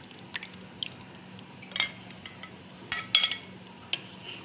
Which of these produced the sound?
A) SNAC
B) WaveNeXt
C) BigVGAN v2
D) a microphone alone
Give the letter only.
D